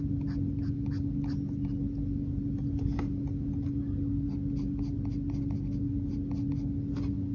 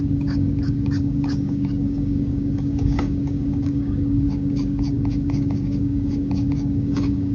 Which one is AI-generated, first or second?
second